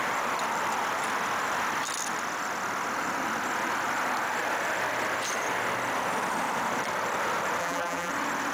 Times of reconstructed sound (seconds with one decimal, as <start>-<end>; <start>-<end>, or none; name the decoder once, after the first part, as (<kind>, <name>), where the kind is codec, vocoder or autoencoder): 7.6-8.1 (vocoder, BigVGAN v2)